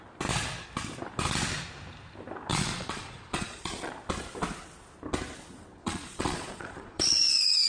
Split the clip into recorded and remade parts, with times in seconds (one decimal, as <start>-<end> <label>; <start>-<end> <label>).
0.0-2.5 recorded; 2.5-3.9 remade; 3.9-5.8 recorded; 5.8-7.7 remade